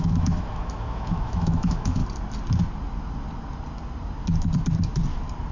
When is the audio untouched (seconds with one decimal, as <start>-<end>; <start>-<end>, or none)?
2.0-5.5